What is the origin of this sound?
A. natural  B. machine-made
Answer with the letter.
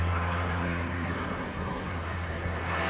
B